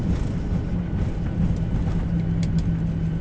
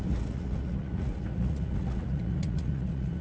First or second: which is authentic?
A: first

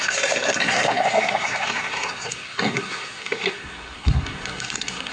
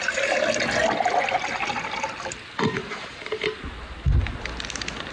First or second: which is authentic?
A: second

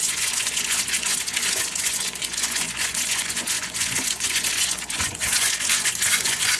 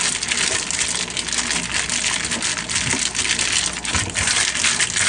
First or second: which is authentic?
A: second